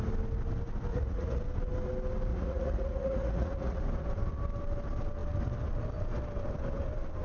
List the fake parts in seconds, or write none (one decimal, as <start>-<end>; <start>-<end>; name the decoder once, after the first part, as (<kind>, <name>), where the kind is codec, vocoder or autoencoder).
0.9-1.4 (vocoder, Vocos); 2.3-3.8